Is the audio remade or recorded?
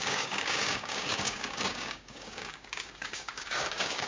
remade